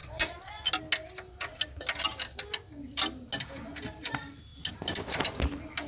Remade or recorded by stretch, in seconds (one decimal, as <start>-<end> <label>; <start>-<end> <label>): 0.0-3.5 recorded; 3.5-5.9 remade